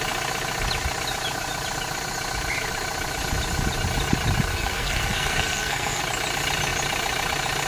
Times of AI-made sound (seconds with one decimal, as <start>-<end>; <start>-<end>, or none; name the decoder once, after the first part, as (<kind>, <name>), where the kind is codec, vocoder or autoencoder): 4.5-6.0 (codec, SNAC)